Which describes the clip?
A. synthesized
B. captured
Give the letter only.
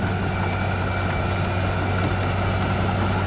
B